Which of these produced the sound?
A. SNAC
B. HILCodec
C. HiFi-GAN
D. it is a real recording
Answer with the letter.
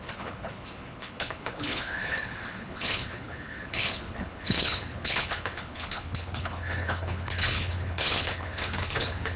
B